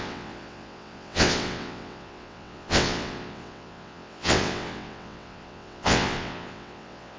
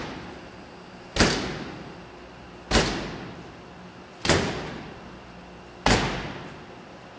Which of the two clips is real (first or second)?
second